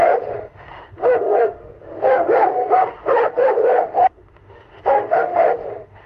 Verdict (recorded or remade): remade